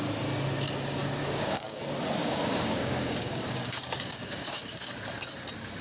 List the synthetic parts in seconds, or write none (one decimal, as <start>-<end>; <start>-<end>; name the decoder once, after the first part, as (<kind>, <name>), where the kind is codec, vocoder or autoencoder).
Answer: 1.2-1.8 (codec, DAC); 2.2-4.9